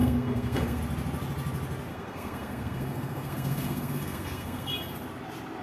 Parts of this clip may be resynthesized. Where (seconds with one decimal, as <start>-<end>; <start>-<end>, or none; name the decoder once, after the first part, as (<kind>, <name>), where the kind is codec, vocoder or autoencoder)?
0.0-0.8 (codec, SNAC); 1.9-4.7